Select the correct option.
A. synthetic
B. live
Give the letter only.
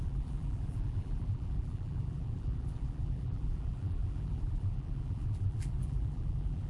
A